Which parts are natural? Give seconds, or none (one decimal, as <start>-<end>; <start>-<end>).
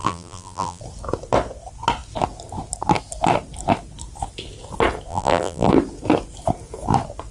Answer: 0.8-5.1; 5.7-7.3